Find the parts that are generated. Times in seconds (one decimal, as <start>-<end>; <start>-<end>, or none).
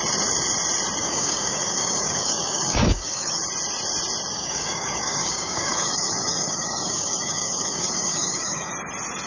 1.0-3.4; 4.3-8.7